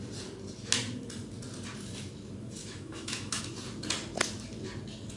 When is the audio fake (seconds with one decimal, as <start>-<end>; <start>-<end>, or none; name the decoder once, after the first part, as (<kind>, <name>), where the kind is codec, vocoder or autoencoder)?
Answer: 2.6-3.4 (autoencoder, DAC-VAE)